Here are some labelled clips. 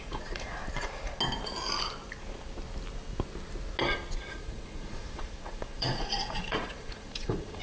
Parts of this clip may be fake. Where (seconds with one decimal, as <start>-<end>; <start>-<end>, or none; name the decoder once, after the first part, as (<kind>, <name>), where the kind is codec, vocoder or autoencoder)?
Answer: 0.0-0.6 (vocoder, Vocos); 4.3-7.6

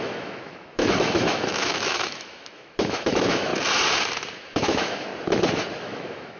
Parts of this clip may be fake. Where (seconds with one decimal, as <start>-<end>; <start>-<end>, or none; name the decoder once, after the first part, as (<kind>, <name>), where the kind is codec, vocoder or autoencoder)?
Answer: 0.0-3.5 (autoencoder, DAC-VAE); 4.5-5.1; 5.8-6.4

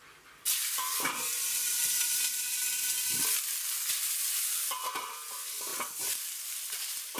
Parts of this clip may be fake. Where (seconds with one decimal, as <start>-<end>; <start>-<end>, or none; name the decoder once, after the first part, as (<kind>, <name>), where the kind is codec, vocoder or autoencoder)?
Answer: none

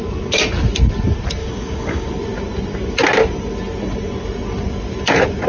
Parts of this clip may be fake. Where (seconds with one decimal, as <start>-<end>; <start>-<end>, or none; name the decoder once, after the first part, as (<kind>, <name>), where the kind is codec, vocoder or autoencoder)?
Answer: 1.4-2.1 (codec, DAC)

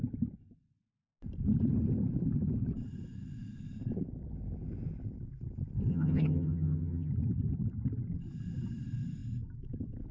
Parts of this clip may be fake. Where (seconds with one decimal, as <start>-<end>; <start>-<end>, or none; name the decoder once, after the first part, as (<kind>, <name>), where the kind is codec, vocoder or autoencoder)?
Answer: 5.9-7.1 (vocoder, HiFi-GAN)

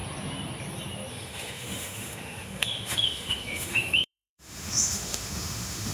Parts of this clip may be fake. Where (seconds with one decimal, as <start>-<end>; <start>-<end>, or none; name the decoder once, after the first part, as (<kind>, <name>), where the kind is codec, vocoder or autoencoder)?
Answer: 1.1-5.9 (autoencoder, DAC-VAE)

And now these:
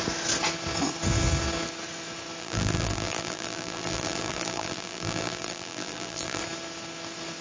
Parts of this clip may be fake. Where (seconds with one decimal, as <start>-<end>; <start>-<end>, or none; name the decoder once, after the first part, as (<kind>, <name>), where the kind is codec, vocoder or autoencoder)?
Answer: 2.4-6.4 (vocoder, BigVGAN v2)

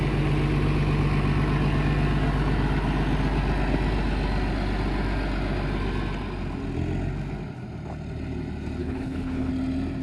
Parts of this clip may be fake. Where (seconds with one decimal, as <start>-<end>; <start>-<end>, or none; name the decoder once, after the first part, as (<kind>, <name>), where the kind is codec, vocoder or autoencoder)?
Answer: 8.8-9.5 (codec, HILCodec)